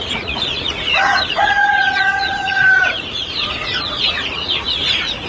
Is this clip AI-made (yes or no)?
yes